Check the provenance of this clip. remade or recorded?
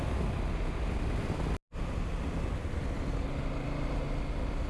recorded